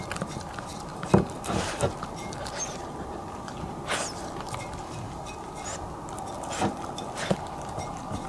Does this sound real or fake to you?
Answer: real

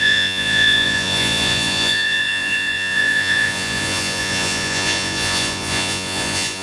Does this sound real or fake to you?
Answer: fake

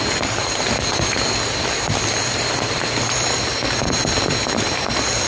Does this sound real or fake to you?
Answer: fake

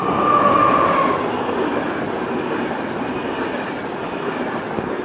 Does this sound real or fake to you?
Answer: real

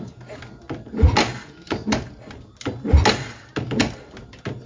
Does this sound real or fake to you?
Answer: real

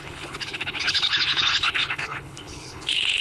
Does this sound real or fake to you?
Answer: fake